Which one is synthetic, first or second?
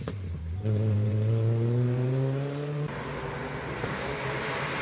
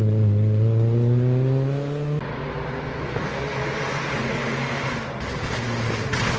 first